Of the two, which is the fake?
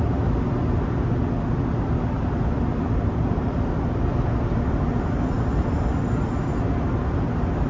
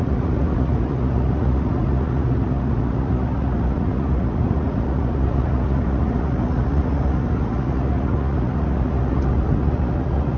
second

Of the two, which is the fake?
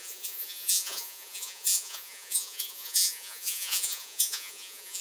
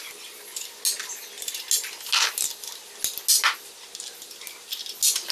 first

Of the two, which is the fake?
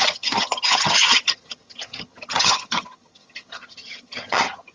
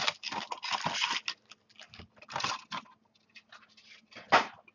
first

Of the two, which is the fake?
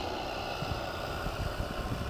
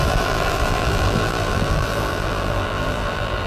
second